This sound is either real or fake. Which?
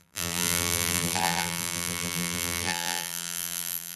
fake